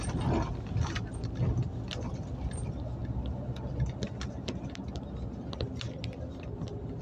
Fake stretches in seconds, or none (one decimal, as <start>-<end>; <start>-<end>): none